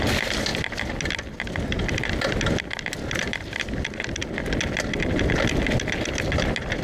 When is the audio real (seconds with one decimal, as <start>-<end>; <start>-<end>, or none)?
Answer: 0.0-6.8